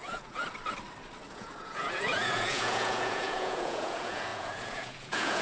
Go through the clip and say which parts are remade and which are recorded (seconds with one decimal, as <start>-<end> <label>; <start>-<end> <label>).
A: 0.0-0.4 remade; 0.4-1.3 recorded; 1.3-5.4 remade